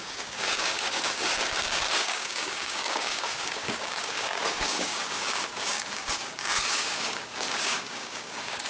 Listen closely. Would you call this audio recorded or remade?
remade